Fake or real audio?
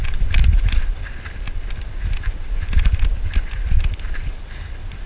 real